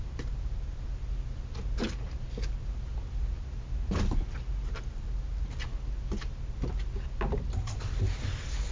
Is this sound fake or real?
real